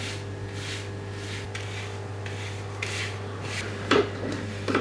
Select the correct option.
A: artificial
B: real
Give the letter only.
B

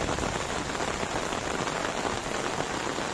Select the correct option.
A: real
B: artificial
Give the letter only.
A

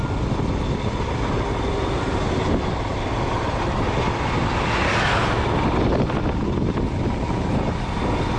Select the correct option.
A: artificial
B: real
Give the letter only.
B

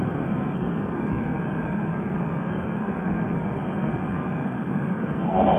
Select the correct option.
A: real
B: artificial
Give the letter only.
B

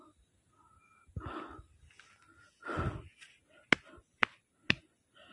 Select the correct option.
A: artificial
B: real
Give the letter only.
B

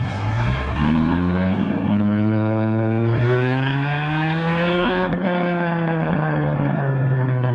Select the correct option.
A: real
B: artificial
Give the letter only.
B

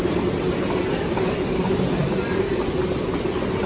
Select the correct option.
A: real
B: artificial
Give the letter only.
A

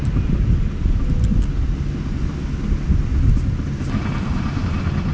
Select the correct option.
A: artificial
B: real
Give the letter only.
B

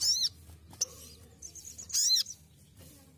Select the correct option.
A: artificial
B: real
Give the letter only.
B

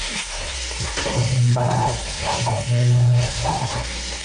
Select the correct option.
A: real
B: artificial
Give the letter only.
B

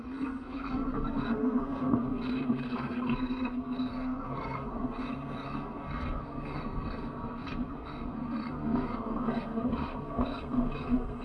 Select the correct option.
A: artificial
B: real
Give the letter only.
A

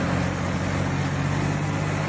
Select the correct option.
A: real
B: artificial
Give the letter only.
A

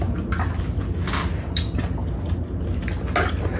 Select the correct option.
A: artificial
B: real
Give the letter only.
B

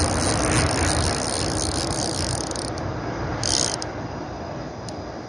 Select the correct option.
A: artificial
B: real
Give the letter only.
B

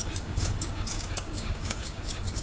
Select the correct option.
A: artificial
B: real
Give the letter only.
A